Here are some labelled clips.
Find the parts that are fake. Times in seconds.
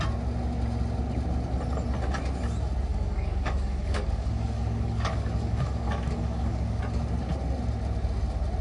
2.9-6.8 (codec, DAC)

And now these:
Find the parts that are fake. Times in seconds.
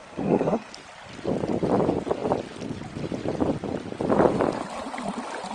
0.0-0.7 (codec, SNAC)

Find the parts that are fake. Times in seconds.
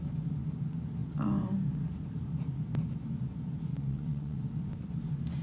3.7-4.4 (vocoder, WaveNeXt)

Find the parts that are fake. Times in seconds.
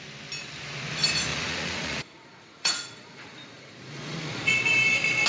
1.3-4.5 (vocoder, Vocos)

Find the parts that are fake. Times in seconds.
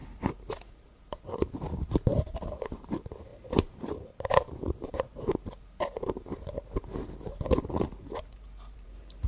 0.7-9.3 (vocoder, BigVGAN v2)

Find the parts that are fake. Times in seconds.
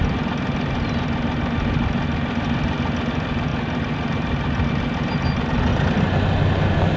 5.7-6.3 (vocoder, BigVGAN v2)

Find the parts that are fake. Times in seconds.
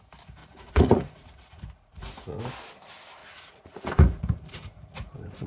0.4-2.4 (vocoder, Vocos); 3.2-5.5